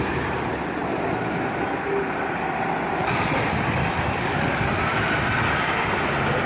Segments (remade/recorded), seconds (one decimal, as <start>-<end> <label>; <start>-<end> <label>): 0.0-3.0 recorded; 3.0-4.5 remade; 4.5-6.5 recorded